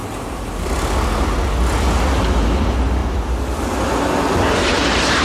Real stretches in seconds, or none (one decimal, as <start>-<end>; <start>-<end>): 0.0-5.2